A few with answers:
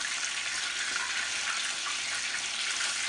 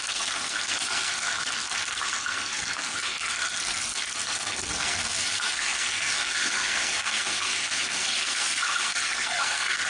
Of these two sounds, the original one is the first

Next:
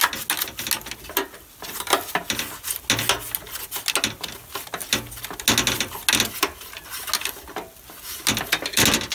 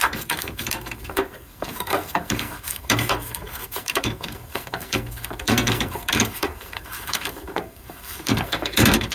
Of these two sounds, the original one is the first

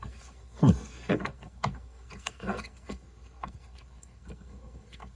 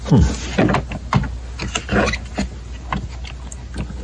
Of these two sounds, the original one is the second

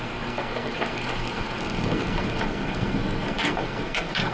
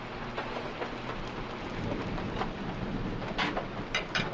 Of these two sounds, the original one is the second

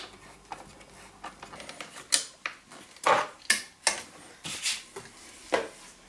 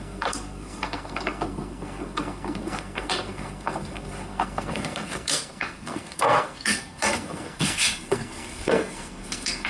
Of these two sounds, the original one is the first